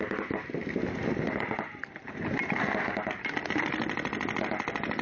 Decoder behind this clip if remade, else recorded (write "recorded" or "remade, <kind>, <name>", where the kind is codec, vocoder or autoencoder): recorded